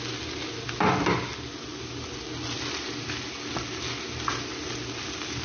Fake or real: real